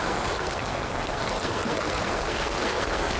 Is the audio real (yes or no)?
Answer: no